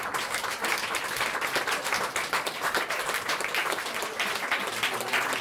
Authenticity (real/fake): real